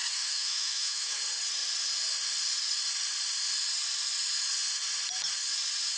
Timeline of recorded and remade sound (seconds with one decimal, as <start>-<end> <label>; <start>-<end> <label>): 0.0-1.2 remade; 1.2-6.0 recorded